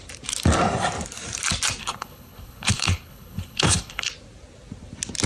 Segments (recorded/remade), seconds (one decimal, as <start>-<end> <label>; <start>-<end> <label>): 0.0-1.8 recorded; 1.8-4.1 remade; 4.1-5.3 recorded